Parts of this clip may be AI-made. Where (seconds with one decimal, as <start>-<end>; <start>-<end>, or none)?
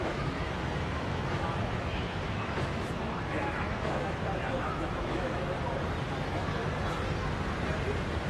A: 0.0-5.4; 6.0-6.6